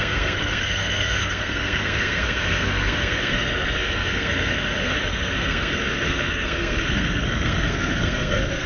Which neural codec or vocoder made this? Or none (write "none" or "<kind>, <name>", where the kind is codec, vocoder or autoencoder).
codec, SNAC